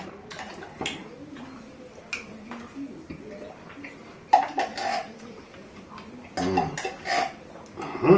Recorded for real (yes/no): yes